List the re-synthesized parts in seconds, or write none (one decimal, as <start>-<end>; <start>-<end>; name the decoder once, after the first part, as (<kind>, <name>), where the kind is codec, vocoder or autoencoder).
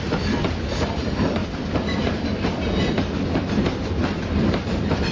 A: 0.0-5.1 (vocoder, BigVGAN v2)